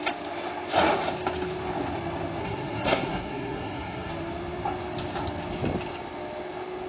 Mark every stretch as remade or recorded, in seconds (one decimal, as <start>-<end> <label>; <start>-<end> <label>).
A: 0.0-2.4 recorded; 2.4-4.1 remade; 4.1-6.9 recorded